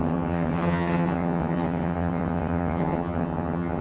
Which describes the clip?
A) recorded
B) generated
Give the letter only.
B